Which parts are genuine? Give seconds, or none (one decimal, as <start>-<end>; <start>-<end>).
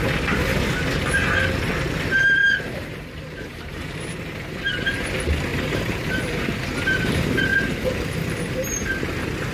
0.0-2.4; 3.8-5.5; 6.4-7.5; 8.5-9.5